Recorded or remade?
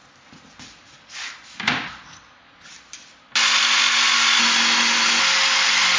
recorded